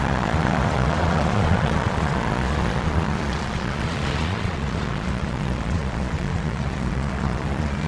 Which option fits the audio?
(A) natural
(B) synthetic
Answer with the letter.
B